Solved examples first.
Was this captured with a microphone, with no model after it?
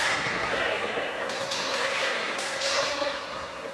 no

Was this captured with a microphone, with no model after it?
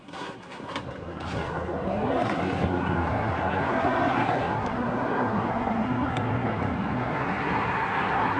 no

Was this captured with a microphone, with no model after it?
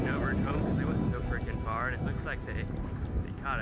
no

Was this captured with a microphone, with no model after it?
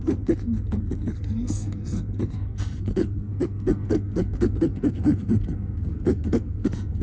no